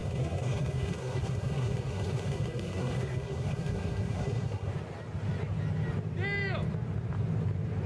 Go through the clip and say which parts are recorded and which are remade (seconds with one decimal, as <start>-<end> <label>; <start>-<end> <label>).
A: 0.0-4.7 remade; 4.7-7.9 recorded